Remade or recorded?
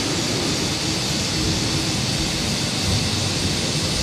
recorded